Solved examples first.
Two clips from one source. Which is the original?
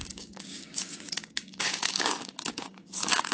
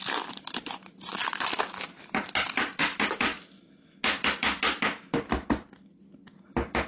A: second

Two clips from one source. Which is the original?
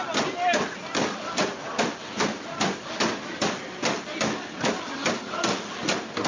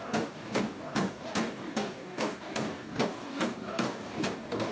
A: first